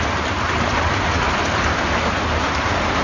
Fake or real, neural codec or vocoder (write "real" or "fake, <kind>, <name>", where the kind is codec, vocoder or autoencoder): fake, vocoder, BigVGAN v2